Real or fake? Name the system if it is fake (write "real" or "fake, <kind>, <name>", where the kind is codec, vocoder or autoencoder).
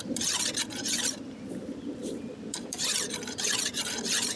fake, vocoder, BigVGAN v2